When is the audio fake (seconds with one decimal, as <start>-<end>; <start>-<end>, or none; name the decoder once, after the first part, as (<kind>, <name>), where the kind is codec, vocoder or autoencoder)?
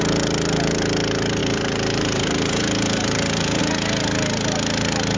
1.4-3.6 (vocoder, BigVGAN v2)